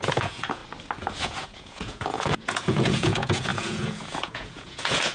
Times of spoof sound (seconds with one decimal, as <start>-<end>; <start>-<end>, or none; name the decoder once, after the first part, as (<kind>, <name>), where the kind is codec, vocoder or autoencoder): 0.0-0.6 (vocoder, Vocos); 1.2-5.1